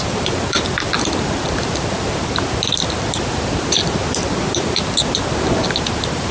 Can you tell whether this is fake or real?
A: real